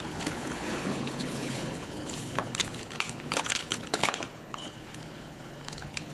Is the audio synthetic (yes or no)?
yes